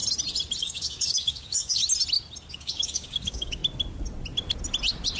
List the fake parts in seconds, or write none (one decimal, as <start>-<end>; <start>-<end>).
0.6-1.8; 2.5-3.6